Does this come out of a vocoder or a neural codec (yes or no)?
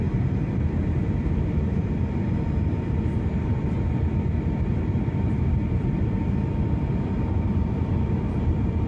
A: no